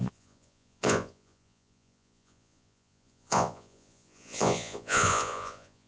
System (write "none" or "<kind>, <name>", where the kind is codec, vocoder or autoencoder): vocoder, Vocos